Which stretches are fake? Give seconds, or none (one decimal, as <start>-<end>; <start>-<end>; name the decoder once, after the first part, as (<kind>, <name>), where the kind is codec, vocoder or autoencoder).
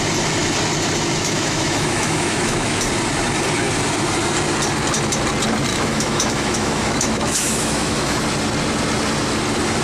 1.2-2.8 (autoencoder, DAC-VAE); 5.7-8.2